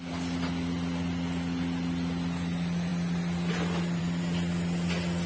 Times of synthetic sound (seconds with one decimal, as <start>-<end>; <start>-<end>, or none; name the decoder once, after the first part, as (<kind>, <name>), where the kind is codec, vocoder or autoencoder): none